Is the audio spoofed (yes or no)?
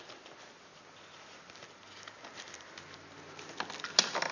no